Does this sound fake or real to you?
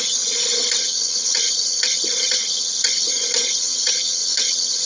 fake